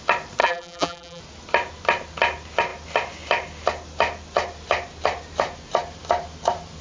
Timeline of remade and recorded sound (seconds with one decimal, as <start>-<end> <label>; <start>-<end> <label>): 0.0-0.4 recorded; 0.4-1.2 remade; 1.2-6.8 recorded